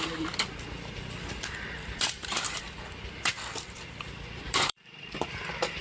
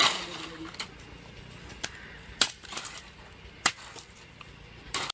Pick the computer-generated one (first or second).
first